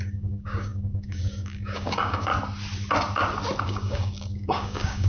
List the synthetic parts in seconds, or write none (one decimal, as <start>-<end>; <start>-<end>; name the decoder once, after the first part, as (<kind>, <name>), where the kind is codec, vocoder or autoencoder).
0.0-2.3 (codec, DAC); 3.6-5.1